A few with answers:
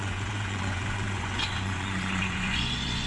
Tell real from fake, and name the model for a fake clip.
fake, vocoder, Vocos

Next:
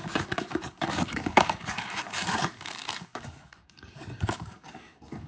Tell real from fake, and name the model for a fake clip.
fake, codec, DAC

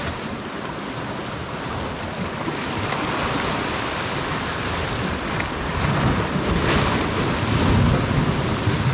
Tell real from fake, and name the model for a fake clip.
real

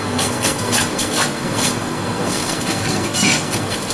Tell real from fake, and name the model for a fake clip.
fake, codec, SNAC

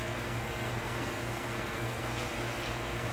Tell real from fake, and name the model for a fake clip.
fake, codec, SNAC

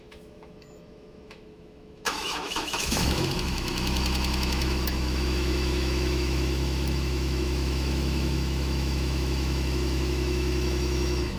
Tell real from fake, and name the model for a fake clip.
fake, autoencoder, DAC-VAE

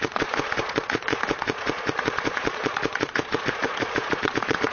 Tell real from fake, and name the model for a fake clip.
fake, vocoder, Vocos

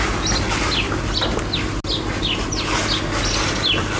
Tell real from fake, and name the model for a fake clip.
real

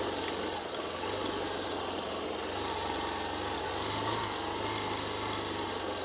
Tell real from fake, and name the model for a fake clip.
real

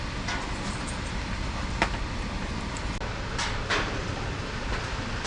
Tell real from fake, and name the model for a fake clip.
real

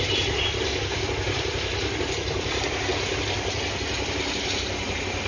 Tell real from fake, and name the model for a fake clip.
real